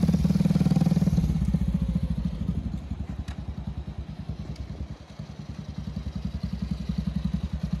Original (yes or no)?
yes